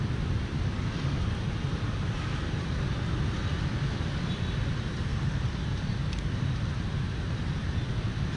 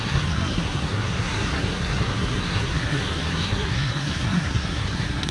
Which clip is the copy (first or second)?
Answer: second